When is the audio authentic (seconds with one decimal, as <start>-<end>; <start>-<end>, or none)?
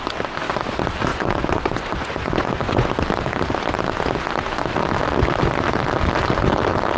0.0-1.1; 2.9-7.0